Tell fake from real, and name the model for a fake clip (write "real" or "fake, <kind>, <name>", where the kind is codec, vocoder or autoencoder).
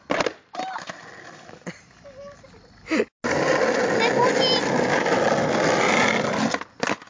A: real